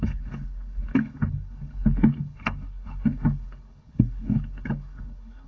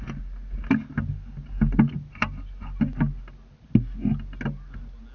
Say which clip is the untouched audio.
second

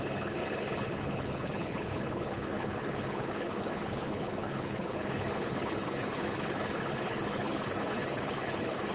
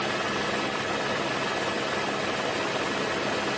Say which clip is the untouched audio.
second